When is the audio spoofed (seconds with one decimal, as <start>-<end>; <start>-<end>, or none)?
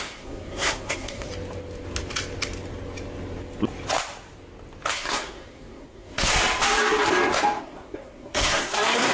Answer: 0.0-1.3; 4.9-6.3; 7.6-9.1